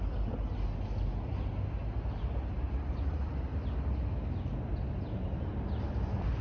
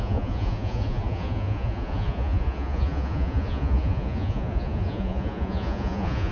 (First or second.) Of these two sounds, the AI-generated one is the second